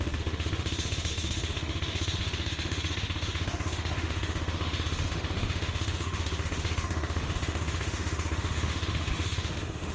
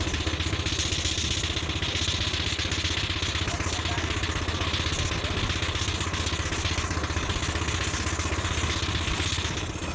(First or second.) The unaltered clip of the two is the second